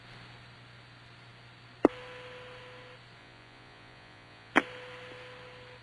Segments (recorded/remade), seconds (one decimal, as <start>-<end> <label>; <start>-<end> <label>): 0.0-3.2 recorded; 3.2-4.5 remade; 4.5-5.8 recorded